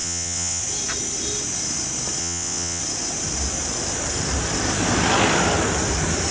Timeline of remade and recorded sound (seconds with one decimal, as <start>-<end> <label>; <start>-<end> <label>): 0.0-0.6 remade; 0.6-2.2 recorded; 2.2-2.8 remade; 2.8-6.3 recorded